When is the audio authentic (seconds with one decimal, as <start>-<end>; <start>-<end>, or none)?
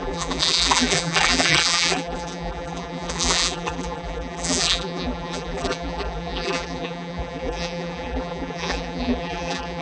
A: none